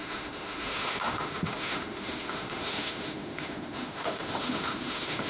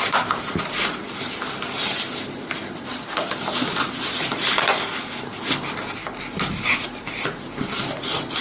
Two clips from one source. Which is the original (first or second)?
second